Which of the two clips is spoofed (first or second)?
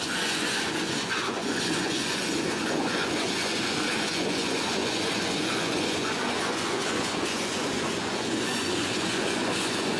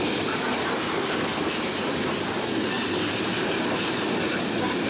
first